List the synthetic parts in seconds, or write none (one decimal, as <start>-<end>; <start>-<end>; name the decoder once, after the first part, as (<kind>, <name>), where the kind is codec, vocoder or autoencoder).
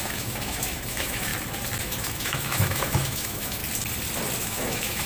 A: 0.0-1.3 (autoencoder, DAC-VAE); 1.8-3.6; 4.4-5.1